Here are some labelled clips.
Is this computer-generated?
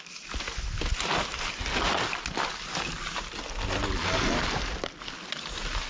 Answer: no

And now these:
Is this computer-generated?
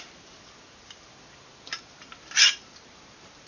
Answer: no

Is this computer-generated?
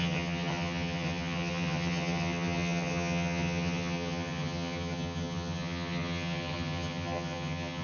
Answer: yes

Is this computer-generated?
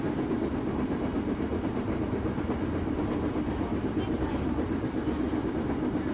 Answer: no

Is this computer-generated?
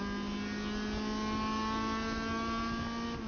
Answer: no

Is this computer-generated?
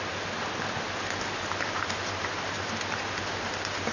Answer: no